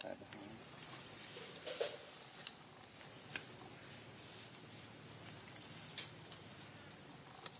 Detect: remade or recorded recorded